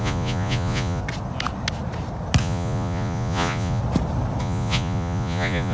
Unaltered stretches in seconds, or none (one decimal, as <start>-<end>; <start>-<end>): 1.0-2.4; 3.8-4.4